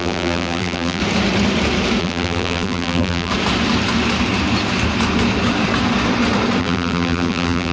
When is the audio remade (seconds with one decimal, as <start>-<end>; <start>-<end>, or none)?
0.0-1.0; 2.0-3.3; 6.6-7.7